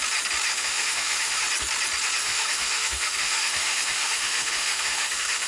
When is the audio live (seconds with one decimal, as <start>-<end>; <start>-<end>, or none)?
0.0-0.5; 1.4-2.2